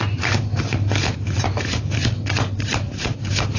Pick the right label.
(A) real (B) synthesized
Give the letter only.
B